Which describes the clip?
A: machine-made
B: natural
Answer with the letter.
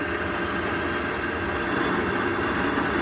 B